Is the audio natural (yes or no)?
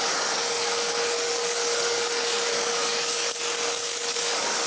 no